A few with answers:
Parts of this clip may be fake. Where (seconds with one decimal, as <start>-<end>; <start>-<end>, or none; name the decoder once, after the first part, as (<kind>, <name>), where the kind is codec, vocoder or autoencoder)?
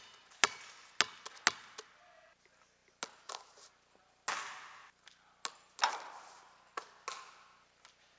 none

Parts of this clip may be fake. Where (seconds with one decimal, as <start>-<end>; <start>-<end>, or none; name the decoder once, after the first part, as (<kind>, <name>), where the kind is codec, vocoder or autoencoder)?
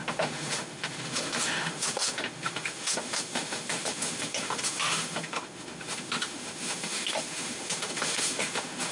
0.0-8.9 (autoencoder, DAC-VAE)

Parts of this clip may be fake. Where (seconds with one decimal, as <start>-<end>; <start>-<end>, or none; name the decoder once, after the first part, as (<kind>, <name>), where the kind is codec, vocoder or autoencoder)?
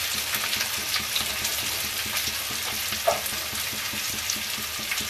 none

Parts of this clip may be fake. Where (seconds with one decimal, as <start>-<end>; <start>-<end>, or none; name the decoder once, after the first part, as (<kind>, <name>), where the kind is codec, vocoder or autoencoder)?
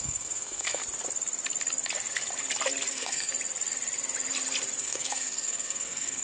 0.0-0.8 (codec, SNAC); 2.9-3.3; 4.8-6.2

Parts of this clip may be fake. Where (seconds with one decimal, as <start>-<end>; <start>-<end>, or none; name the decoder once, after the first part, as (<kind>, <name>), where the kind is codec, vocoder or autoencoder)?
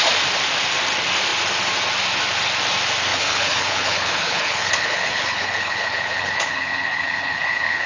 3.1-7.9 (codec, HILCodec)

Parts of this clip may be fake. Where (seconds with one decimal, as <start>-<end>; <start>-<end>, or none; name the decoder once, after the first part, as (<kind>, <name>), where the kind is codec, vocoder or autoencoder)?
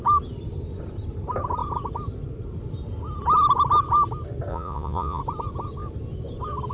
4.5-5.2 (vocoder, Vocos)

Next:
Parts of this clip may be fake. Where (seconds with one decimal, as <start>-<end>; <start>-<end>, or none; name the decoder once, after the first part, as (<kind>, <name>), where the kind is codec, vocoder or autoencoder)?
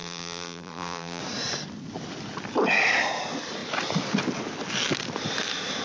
0.0-1.2 (vocoder, BigVGAN v2)